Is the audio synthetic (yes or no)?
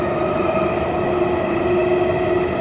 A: no